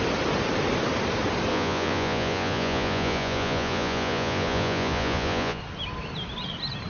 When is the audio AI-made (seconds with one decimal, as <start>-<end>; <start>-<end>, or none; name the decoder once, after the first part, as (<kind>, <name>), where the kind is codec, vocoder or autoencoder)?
1.5-5.6 (vocoder, Vocos)